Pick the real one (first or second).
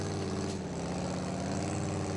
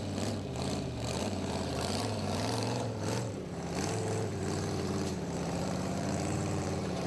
first